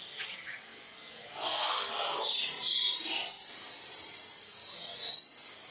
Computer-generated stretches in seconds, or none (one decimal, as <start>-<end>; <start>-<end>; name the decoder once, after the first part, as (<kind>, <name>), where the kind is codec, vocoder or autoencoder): 0.0-0.7 (vocoder, BigVGAN v2); 2.2-2.8; 3.7-4.6